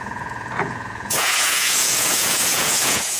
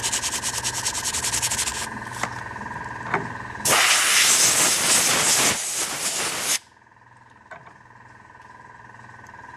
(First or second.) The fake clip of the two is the first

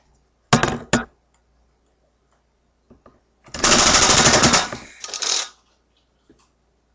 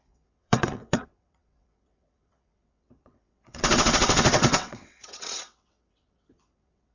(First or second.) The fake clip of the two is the second